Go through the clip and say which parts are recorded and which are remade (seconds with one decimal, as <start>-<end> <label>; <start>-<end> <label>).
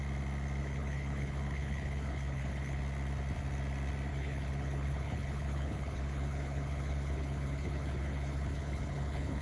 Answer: 0.0-0.6 recorded; 0.6-2.8 remade; 2.8-4.1 recorded; 4.1-9.4 remade